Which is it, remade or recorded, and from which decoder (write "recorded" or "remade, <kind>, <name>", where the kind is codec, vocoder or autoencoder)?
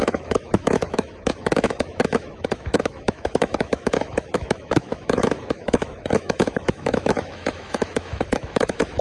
remade, autoencoder, DAC-VAE